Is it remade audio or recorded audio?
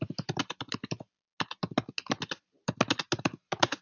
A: recorded